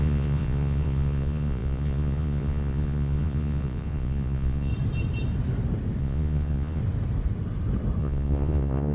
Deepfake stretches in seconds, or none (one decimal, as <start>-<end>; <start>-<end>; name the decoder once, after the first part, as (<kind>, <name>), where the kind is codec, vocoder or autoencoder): 0.0-4.7 (vocoder, Vocos); 6.0-6.8; 8.0-8.9